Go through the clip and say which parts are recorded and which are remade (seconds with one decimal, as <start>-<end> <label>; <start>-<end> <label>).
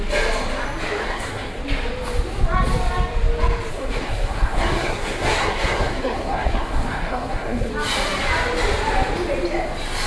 0.0-1.0 recorded; 1.0-1.6 remade; 1.6-3.7 recorded; 3.7-7.7 remade; 7.7-10.1 recorded